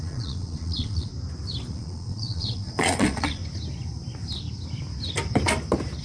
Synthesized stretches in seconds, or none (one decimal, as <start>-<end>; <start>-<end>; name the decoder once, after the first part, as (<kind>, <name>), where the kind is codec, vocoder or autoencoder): 0.0-1.1 (vocoder, Vocos); 1.7-3.4